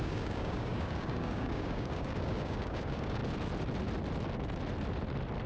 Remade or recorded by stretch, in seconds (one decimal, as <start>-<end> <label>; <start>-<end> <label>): 0.0-3.2 remade; 3.2-5.5 recorded